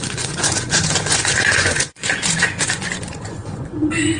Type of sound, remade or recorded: remade